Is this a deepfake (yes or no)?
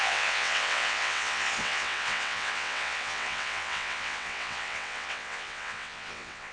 yes